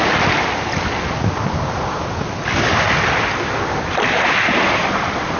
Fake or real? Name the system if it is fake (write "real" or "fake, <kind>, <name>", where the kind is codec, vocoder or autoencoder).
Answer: real